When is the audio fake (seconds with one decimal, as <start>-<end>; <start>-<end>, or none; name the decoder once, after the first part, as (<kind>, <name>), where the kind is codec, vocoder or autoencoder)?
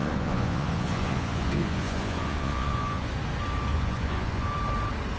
0.0-3.1 (vocoder, Vocos); 3.7-4.5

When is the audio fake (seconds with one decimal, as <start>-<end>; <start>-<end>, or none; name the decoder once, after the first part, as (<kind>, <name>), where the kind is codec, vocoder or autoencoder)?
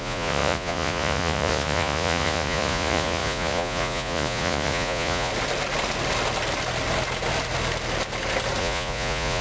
0.0-5.3 (vocoder, Vocos); 8.6-9.4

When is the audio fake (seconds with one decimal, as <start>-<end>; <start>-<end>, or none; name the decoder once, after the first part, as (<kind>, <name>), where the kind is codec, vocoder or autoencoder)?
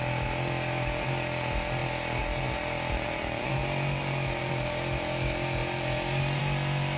none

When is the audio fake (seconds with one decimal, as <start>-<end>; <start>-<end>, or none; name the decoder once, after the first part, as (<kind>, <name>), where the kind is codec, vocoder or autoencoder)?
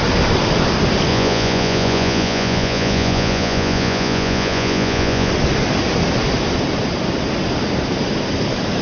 1.1-5.3 (vocoder, Vocos)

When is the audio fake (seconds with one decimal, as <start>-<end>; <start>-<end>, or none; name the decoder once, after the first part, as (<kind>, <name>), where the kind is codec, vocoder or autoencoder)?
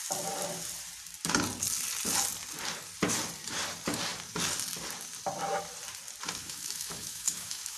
6.4-7.8 (autoencoder, DAC-VAE)